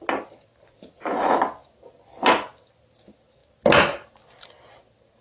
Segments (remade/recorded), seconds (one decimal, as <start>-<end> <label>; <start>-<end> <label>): 0.0-0.7 recorded; 0.7-1.4 remade; 1.4-5.2 recorded